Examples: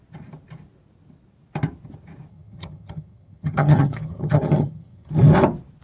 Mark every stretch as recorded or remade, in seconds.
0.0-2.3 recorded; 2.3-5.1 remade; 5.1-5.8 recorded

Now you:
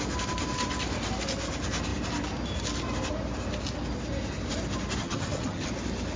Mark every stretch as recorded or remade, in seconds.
0.0-5.0 recorded; 5.0-5.7 remade; 5.7-6.2 recorded

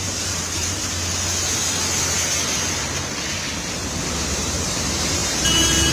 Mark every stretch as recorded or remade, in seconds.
0.0-0.8 remade; 0.8-4.2 recorded; 4.2-5.9 remade

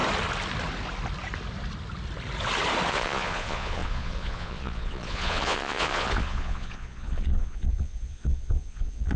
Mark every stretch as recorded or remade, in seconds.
0.0-2.9 recorded; 2.9-9.2 remade

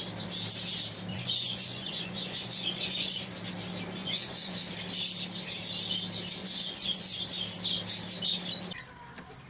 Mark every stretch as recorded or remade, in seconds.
0.0-1.1 recorded; 1.1-3.3 remade; 3.3-4.0 recorded; 4.0-4.6 remade; 4.6-6.4 recorded; 6.4-7.2 remade; 7.2-9.5 recorded

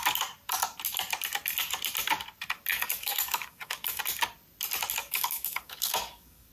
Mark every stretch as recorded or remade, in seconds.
0.0-2.7 recorded; 2.7-4.0 remade; 4.0-5.0 recorded; 5.0-6.5 remade